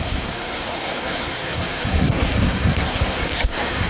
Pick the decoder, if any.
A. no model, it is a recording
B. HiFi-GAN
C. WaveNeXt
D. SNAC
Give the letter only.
D